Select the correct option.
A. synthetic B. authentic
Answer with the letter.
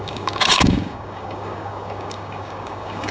A